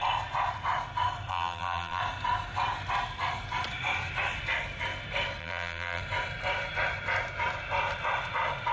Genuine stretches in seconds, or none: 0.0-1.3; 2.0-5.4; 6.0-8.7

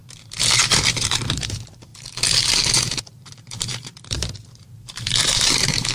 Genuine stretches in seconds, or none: 0.0-1.0; 1.9-3.0

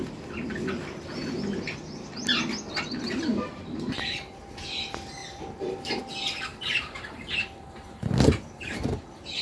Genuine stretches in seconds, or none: 0.0-3.3; 4.8-5.2; 6.0-6.5; 8.5-9.4